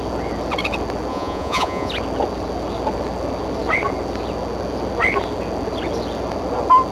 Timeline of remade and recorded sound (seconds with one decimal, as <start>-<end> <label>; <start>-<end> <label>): 0.0-1.1 recorded; 1.1-1.9 remade; 1.9-6.9 recorded